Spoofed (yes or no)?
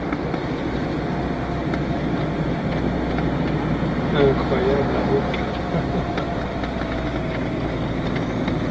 no